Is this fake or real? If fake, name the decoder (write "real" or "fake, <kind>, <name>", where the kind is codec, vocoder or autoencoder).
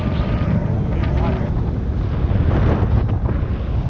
real